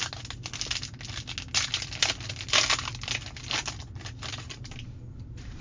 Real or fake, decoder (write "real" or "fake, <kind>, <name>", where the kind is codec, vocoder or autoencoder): real